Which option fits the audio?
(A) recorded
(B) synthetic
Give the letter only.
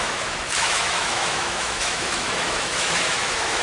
B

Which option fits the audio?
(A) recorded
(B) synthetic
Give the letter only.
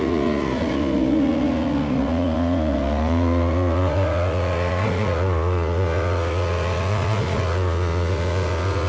B